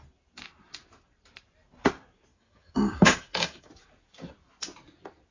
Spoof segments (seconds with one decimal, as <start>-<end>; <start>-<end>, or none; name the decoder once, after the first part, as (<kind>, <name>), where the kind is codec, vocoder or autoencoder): 2.3-3.7 (codec, DAC)